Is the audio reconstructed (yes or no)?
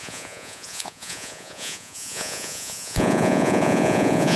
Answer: yes